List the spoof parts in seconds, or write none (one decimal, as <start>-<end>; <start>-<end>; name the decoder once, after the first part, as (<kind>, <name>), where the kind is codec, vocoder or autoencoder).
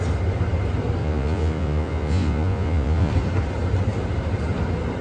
1.0-3.1 (vocoder, Vocos)